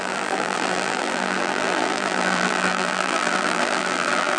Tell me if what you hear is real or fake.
fake